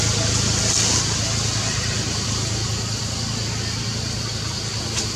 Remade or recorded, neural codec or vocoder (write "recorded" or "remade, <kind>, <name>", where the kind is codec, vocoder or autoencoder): recorded